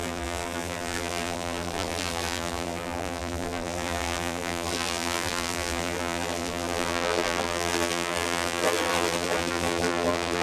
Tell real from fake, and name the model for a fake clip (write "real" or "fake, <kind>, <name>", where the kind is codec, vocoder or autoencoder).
fake, vocoder, BigVGAN v2